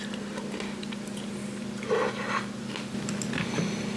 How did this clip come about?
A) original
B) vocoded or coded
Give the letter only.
A